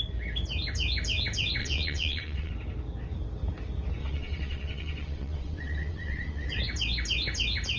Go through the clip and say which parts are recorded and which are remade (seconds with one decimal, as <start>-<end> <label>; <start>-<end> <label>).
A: 0.0-1.6 recorded; 1.6-2.5 remade; 2.5-4.0 recorded; 4.0-6.5 remade; 6.5-7.8 recorded